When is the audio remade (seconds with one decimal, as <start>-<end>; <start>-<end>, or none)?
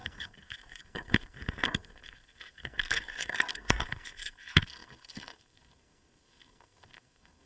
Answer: 0.0-7.5